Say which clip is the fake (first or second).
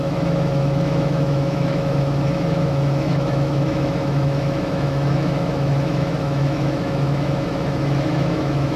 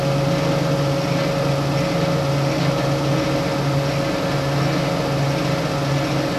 first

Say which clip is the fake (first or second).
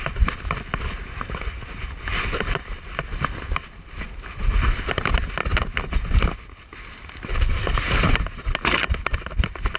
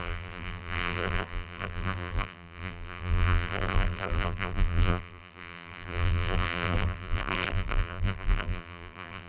second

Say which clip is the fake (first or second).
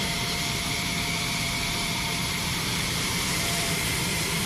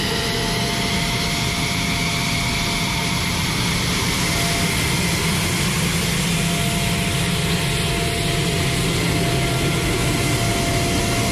first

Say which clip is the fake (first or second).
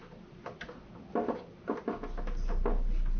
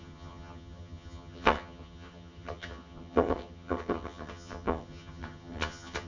second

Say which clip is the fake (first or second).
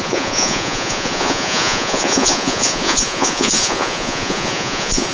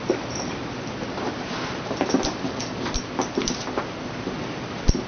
first